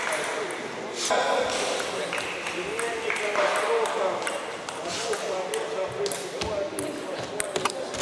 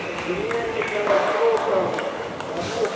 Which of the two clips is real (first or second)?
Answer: first